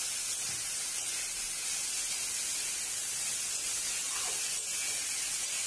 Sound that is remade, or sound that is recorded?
recorded